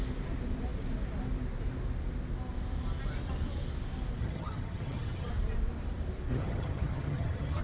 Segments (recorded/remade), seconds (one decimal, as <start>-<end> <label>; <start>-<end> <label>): 0.0-4.2 recorded; 4.2-5.3 remade; 5.3-6.3 recorded; 6.3-7.6 remade